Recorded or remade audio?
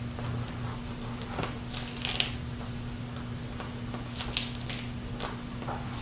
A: recorded